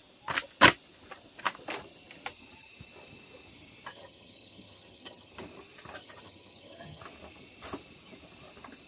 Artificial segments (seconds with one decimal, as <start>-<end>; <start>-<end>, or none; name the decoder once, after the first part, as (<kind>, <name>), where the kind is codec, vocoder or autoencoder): 3.9-5.3 (vocoder, HiFi-GAN); 6.0-7.0